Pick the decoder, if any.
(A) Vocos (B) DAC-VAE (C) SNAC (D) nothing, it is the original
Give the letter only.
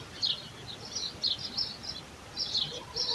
D